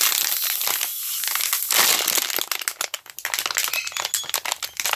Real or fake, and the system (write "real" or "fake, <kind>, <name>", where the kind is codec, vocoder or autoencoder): real